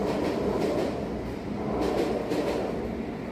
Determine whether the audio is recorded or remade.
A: recorded